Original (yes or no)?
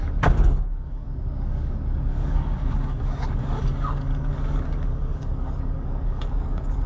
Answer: no